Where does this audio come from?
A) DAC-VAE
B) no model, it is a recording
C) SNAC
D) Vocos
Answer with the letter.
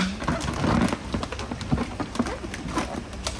B